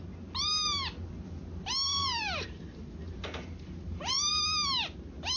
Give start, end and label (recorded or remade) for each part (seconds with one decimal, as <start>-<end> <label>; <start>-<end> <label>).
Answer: 0.0-2.0 recorded; 2.0-4.3 remade; 4.3-5.4 recorded